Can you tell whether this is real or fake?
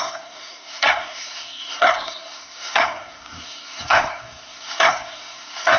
fake